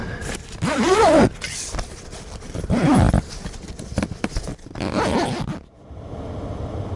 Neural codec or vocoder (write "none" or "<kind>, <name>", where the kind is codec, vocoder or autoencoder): vocoder, BigVGAN v2